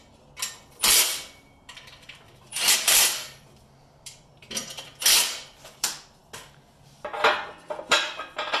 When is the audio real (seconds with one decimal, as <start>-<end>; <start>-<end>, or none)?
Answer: 0.0-0.8; 6.2-7.8